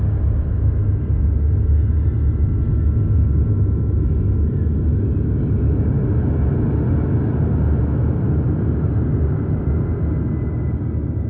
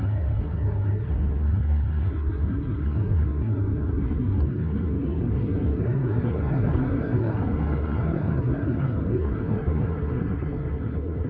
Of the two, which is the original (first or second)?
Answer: first